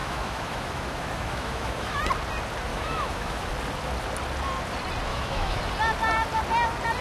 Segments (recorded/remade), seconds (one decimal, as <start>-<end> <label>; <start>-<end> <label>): 0.0-2.0 remade; 2.0-2.7 recorded; 2.7-3.5 remade; 3.5-5.1 recorded; 5.1-5.6 remade; 5.6-7.0 recorded